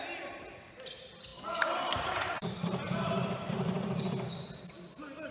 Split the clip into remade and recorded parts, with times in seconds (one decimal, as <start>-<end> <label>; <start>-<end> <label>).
0.0-1.3 recorded; 1.3-4.5 remade; 4.5-5.3 recorded